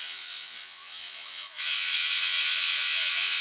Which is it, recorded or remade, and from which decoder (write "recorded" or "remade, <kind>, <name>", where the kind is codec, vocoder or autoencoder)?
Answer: remade, vocoder, Vocos